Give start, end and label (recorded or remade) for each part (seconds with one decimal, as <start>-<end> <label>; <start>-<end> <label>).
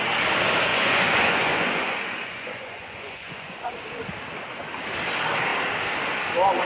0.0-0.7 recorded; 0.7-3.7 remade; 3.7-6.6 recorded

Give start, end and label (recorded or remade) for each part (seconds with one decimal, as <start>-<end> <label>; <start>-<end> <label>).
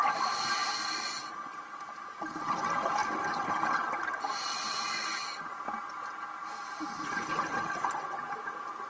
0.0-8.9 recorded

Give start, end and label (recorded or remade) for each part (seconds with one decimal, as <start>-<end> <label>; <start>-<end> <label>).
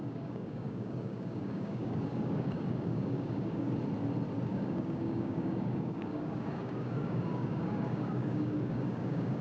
0.0-3.7 remade; 3.7-4.5 recorded; 4.5-9.4 remade